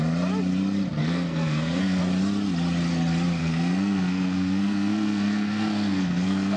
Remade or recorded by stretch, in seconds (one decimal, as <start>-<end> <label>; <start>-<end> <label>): 0.0-1.0 recorded; 1.0-2.0 remade; 2.0-3.4 recorded; 3.4-6.6 remade

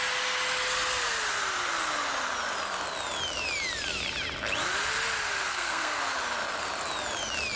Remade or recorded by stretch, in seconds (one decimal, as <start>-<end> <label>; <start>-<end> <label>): 0.0-5.5 recorded; 5.5-6.0 remade; 6.0-7.6 recorded